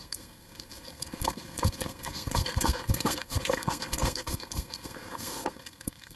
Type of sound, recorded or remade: remade